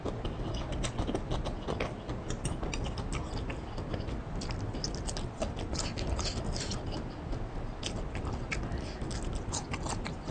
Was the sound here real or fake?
real